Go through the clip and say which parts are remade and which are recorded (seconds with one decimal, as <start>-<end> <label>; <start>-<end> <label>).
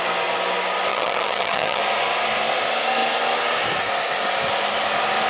0.0-0.9 recorded; 0.9-1.8 remade; 1.8-5.3 recorded